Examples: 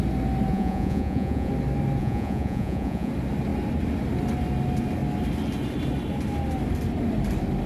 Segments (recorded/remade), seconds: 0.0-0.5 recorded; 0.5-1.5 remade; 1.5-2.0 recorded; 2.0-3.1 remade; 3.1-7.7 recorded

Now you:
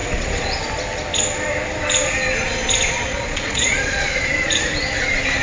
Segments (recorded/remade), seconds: 0.0-0.6 remade; 0.6-3.1 recorded; 3.1-4.3 remade; 4.3-5.4 recorded

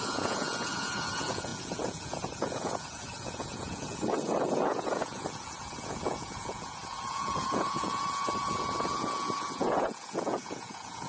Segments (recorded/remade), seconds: 0.0-11.1 remade

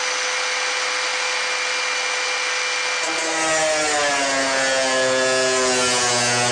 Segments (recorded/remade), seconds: 0.0-6.5 recorded

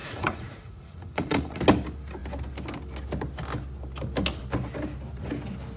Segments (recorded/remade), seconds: 0.0-1.6 remade; 1.6-5.8 recorded